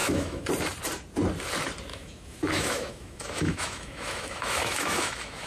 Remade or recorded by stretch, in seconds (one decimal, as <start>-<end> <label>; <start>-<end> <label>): 0.0-0.5 remade; 0.5-1.9 recorded; 1.9-5.5 remade